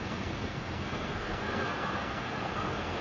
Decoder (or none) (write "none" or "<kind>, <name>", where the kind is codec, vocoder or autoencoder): codec, SNAC